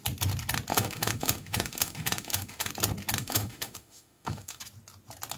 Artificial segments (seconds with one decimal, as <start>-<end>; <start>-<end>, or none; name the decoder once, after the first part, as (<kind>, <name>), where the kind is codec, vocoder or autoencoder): 0.7-2.7 (autoencoder, DAC-VAE); 3.2-4.6

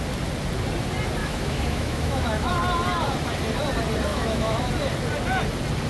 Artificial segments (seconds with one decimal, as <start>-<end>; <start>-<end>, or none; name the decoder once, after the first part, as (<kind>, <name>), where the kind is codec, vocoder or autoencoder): 1.2-2.5 (autoencoder, DAC-VAE); 4.1-4.7

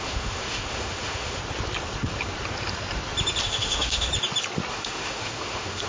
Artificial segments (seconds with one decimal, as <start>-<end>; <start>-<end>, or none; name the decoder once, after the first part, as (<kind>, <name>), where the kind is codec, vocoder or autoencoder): 0.0-1.4 (autoencoder, DAC-VAE); 3.4-4.1; 4.7-5.9

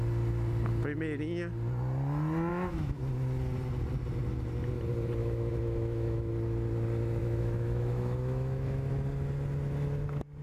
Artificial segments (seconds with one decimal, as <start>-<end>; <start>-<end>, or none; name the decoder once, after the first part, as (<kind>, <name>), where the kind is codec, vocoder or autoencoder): 2.5-3.0 (autoencoder, DAC-VAE); 5.2-6.3; 7.2-8.9

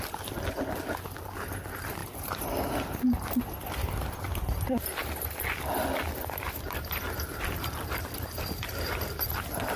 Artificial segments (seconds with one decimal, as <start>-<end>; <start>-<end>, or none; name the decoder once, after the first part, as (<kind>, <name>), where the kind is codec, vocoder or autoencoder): none

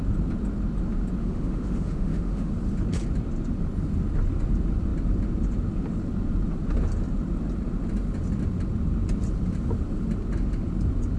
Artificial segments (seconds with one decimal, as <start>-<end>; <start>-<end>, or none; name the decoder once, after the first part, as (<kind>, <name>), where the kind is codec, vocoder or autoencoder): 1.2-2.5 (autoencoder, DAC-VAE)

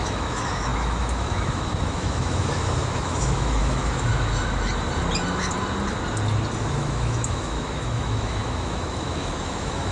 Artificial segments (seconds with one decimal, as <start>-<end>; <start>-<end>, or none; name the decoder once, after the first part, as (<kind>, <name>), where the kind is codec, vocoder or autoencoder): 0.0-4.1 (autoencoder, DAC-VAE); 6.7-9.9